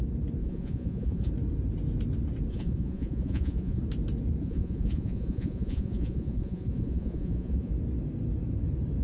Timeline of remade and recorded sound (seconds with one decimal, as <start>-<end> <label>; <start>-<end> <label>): 0.0-0.4 recorded; 0.4-1.3 remade; 1.3-2.5 recorded; 2.5-3.8 remade; 3.8-4.4 recorded; 4.4-7.7 remade; 7.7-9.0 recorded